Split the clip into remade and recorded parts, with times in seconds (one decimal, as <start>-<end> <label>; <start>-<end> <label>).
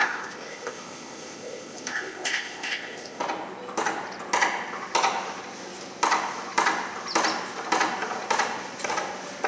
0.0-3.2 remade; 3.2-9.5 recorded